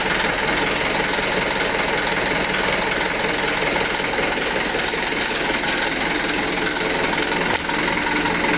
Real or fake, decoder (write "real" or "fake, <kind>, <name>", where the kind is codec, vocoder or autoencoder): real